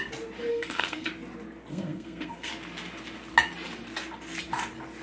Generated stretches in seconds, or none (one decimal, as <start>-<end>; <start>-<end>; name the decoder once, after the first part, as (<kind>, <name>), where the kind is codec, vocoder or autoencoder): 0.5-1.1 (codec, SNAC); 1.7-2.5